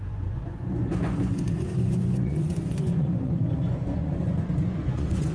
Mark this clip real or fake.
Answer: fake